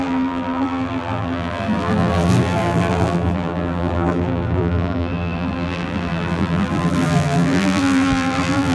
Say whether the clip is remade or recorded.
remade